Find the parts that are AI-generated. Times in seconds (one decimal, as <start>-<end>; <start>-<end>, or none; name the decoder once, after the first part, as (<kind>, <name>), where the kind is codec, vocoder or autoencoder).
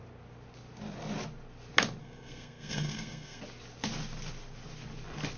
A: 2.0-3.4 (codec, SNAC)